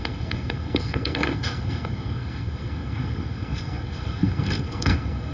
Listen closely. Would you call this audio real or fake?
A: fake